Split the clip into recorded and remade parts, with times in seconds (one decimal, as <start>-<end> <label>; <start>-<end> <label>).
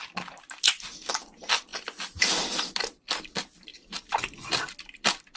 0.0-1.7 recorded; 1.7-3.3 remade; 3.3-5.4 recorded